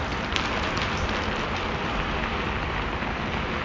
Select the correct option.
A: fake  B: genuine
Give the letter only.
B